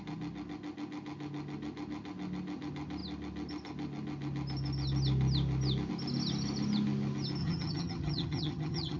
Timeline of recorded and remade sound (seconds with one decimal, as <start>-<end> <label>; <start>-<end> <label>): 0.0-7.4 recorded; 7.4-9.0 remade